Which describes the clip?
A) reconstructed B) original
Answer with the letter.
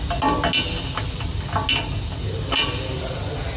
B